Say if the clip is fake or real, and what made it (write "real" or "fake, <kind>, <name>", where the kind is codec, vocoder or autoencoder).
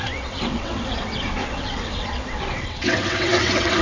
fake, vocoder, WaveNeXt